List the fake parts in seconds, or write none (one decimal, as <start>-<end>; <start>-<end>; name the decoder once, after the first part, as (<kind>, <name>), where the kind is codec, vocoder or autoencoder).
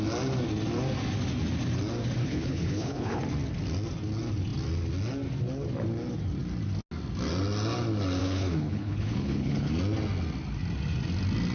2.2-3.2 (codec, HILCodec); 8.2-9.7